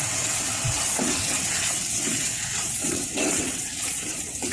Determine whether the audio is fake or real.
fake